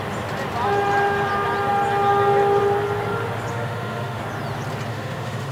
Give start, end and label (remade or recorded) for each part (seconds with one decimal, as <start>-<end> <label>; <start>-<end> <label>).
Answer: 0.0-3.5 recorded; 3.5-4.2 remade; 4.2-4.9 recorded; 4.9-5.5 remade